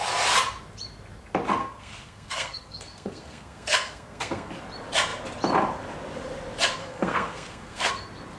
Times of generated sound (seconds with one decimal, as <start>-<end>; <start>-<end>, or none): 1.6-4.5; 6.8-7.9